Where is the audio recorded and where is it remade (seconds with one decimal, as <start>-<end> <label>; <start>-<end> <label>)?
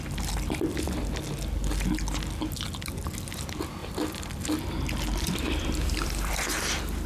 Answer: 0.0-3.8 recorded; 3.8-7.1 remade